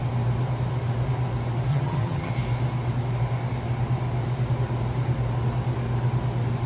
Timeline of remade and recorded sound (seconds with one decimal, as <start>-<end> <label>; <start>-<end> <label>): 0.0-1.7 recorded; 1.7-2.3 remade; 2.3-6.7 recorded